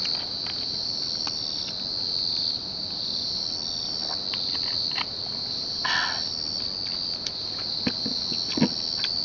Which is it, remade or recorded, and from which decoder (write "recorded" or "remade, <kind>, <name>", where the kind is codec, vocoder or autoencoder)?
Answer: recorded